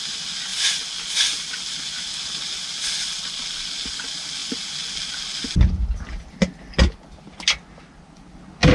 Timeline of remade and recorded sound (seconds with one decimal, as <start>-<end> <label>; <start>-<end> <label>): 0.0-8.7 recorded